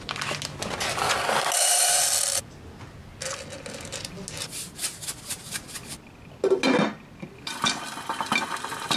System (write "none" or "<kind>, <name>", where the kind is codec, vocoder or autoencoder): none